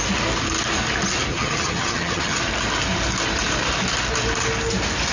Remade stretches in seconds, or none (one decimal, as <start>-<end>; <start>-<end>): 1.3-2.4